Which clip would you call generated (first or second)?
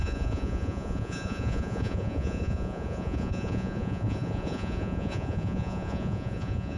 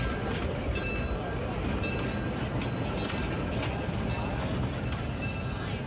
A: first